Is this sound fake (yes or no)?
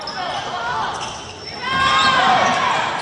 no